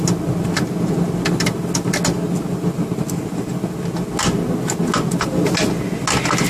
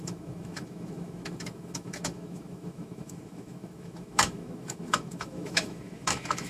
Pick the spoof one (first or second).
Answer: second